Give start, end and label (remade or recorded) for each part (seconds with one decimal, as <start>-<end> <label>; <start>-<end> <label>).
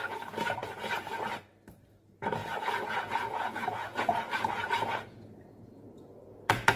0.0-0.6 recorded; 0.6-1.2 remade; 1.2-2.4 recorded; 2.4-6.8 remade